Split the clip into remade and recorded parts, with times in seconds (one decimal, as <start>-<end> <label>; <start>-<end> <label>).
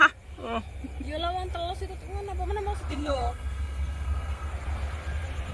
0.0-2.9 recorded; 2.9-4.5 remade; 4.5-5.5 recorded